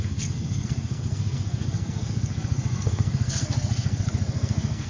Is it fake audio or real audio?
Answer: fake